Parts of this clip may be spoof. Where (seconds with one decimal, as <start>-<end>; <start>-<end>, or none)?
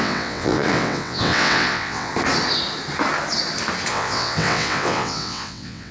0.0-2.1; 3.9-5.9